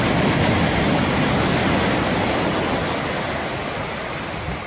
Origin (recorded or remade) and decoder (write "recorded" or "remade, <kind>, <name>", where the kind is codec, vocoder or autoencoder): recorded